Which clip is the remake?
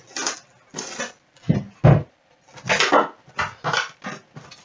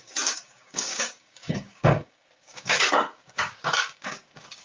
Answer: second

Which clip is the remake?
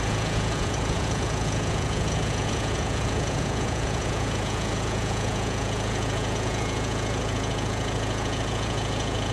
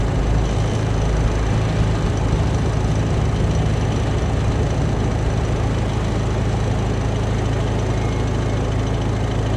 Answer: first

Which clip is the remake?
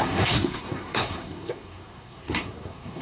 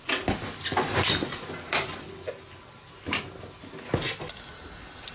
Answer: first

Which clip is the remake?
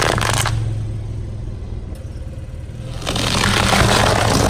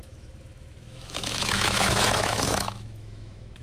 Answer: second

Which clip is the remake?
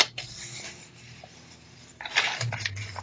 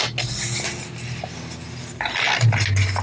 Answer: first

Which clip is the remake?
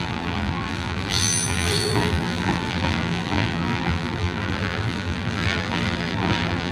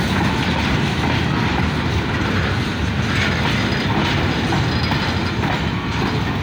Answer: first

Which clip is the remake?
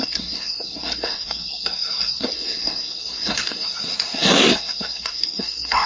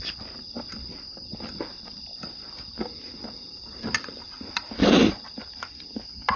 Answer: first